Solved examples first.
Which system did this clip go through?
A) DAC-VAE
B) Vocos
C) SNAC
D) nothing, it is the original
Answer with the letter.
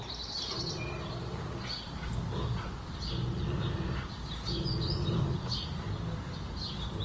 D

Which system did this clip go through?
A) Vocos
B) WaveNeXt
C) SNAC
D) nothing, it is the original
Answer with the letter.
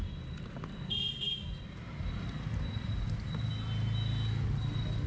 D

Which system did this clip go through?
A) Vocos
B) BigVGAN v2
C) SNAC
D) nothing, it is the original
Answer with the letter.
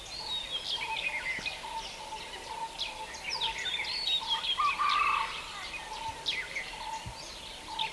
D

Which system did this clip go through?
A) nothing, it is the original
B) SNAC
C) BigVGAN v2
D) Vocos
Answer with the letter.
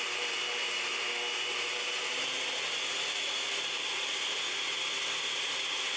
A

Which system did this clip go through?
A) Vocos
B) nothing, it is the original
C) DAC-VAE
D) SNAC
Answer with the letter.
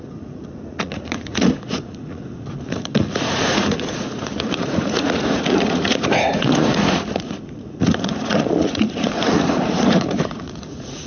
A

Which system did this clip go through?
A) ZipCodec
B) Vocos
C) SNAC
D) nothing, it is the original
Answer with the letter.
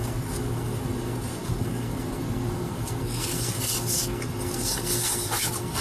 C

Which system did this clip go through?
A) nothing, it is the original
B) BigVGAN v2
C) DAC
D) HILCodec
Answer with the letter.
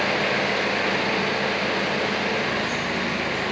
A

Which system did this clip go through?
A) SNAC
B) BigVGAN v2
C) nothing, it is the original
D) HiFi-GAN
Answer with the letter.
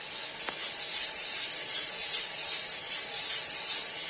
C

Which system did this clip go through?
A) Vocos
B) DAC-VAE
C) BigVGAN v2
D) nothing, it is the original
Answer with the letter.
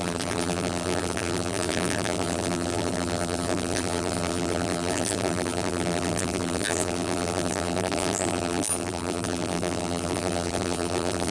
C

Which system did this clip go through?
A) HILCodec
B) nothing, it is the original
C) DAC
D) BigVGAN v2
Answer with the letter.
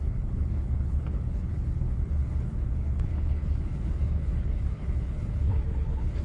A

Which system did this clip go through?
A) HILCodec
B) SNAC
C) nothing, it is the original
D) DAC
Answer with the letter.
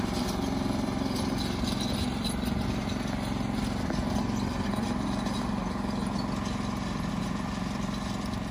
C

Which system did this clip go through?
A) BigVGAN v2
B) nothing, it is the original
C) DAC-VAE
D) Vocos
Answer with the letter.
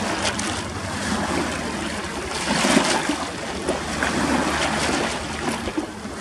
B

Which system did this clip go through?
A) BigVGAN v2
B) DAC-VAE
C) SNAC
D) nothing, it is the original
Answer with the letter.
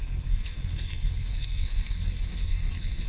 C